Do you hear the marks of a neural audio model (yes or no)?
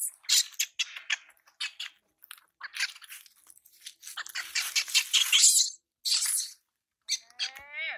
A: no